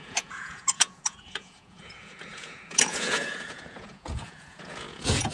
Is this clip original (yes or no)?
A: no